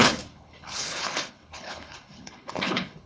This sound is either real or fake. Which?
fake